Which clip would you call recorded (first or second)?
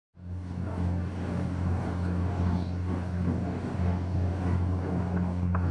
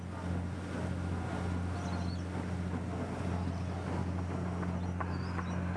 second